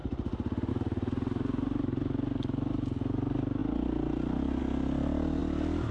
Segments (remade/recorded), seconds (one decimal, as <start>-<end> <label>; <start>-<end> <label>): 0.0-5.9 recorded